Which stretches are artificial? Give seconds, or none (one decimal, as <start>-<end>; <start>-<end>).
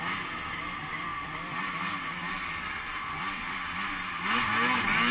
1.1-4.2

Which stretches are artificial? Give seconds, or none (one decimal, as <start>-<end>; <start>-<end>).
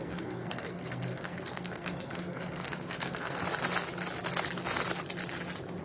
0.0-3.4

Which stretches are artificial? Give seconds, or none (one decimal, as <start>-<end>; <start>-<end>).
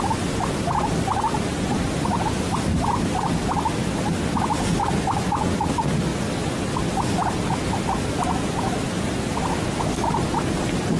1.1-3.3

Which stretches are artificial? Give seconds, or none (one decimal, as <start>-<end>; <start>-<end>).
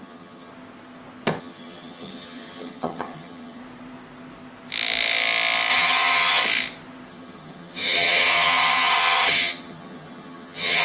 0.0-0.5; 1.4-3.6; 5.7-6.4; 7.1-10.8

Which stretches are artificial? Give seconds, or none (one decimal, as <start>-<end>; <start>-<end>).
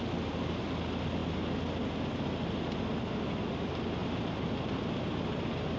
4.0-4.5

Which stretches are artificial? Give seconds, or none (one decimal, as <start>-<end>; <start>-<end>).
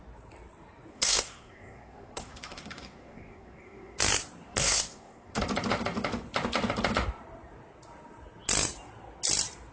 0.9-4.0; 4.5-5.4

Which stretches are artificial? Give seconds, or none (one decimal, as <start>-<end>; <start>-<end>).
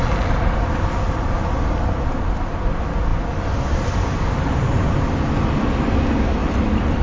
none